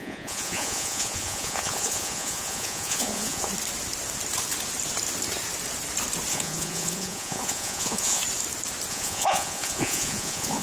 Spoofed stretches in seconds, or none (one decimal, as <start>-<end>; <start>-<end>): 0.0-3.5; 6.3-8.2; 8.9-10.6